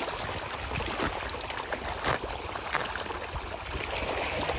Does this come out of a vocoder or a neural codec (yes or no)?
no